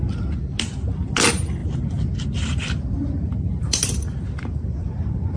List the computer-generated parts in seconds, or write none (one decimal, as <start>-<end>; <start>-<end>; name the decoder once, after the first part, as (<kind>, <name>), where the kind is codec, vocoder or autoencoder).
none